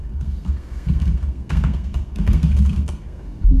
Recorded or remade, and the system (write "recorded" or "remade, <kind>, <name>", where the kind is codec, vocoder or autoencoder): remade, codec, SNAC